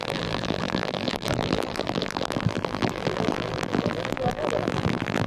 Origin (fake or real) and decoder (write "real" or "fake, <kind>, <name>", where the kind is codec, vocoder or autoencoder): fake, vocoder, BigVGAN v2